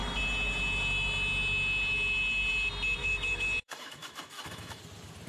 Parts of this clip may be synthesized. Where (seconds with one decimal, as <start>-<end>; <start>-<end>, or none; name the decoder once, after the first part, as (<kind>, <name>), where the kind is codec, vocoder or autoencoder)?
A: 3.0-4.8 (autoencoder, DAC-VAE)